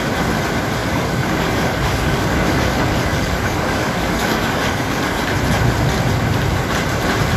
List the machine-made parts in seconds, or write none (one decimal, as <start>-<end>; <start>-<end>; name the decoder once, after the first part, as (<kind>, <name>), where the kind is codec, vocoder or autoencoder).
0.8-5.2 (codec, DAC)